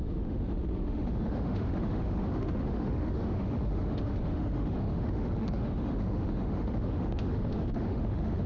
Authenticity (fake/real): fake